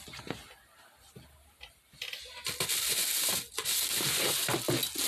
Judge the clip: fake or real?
real